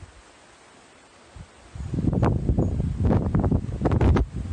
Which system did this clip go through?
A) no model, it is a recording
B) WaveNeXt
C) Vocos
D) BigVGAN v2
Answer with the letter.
A